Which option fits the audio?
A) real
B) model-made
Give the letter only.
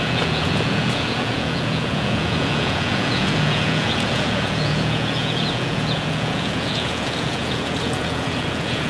B